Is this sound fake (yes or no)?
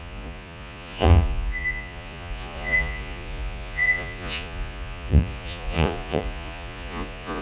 yes